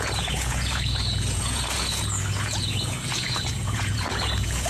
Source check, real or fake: fake